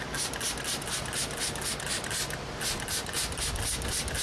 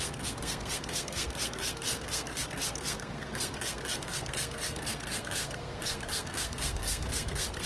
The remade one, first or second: second